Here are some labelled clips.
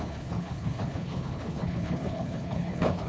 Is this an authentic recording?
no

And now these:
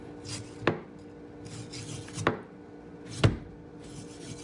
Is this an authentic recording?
yes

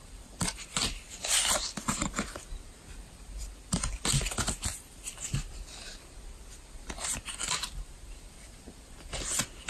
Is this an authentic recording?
no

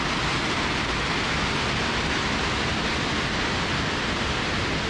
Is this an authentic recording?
yes